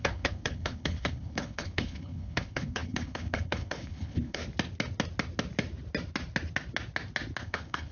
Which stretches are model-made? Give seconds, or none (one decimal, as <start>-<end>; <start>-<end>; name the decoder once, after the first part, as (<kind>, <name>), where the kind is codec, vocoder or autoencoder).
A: 0.0-4.4 (codec, HILCodec); 7.4-7.9